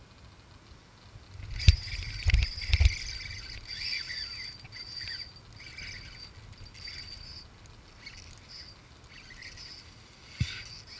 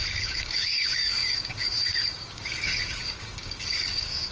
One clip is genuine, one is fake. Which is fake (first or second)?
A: second